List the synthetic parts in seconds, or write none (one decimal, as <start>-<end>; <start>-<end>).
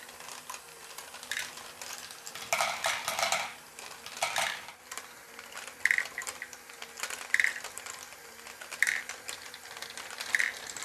none